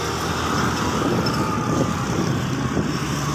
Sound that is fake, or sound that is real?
real